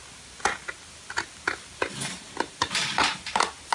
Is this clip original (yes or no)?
yes